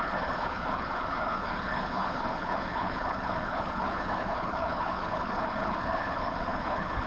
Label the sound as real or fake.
fake